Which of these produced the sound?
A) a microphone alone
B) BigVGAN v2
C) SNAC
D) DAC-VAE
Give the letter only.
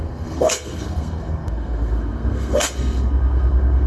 C